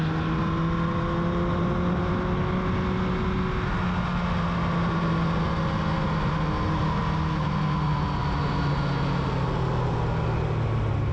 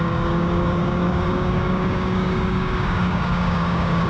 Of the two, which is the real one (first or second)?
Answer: first